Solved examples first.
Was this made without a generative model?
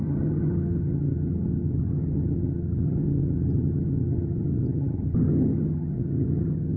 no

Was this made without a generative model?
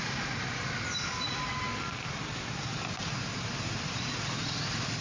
yes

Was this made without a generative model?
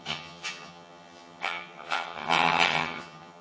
no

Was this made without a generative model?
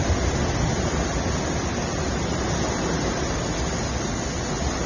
yes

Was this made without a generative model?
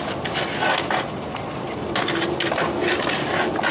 yes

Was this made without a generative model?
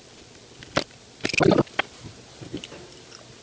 yes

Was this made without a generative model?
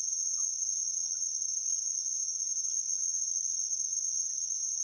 no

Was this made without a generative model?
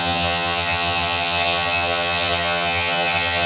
no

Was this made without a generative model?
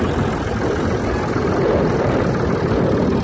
yes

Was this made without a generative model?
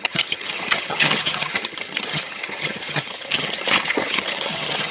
no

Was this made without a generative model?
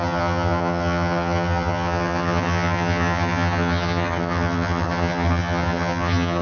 no